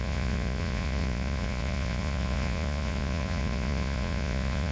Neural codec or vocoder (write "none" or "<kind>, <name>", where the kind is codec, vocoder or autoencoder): vocoder, Vocos